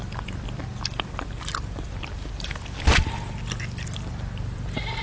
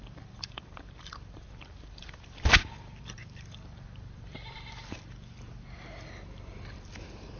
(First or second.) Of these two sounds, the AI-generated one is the second